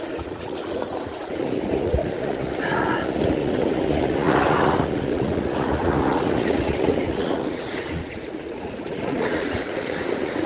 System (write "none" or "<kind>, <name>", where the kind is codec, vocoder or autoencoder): vocoder, Vocos